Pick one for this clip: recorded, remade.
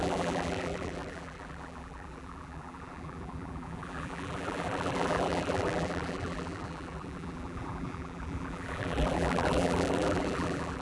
remade